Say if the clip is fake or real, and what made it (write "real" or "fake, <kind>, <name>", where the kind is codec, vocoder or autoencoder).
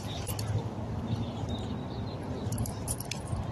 real